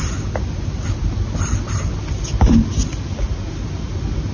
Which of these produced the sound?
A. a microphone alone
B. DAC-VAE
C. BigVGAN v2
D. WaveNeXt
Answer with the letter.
A